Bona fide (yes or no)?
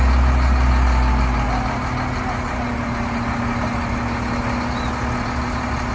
yes